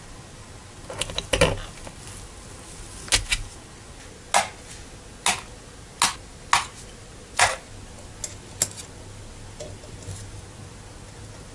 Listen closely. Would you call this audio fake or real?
real